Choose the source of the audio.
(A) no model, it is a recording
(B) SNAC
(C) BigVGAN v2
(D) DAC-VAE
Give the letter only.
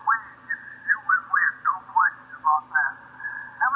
A